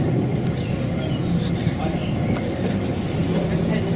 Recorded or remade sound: recorded